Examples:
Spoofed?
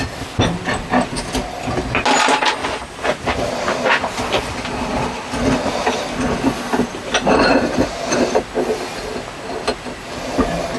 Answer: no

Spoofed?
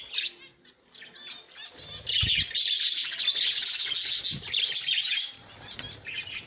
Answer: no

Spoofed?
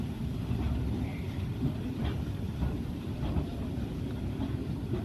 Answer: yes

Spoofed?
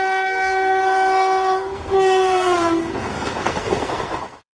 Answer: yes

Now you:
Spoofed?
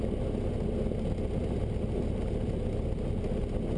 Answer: no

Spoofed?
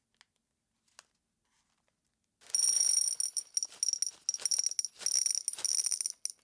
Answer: no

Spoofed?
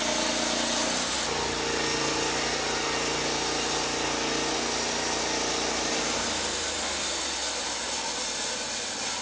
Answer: no